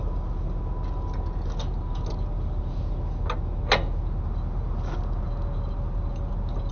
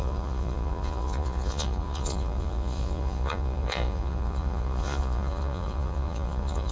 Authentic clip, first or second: first